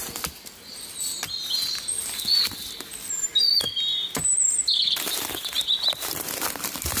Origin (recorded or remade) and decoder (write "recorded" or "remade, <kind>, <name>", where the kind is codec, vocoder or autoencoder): recorded